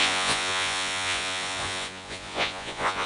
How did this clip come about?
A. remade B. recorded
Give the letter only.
A